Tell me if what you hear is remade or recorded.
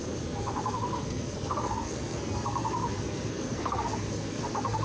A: remade